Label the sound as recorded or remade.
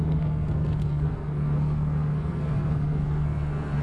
remade